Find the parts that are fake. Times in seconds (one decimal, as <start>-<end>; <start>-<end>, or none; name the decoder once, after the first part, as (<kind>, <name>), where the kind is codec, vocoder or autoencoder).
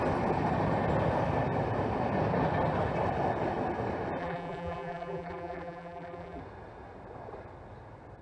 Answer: 4.2-6.4 (vocoder, BigVGAN v2)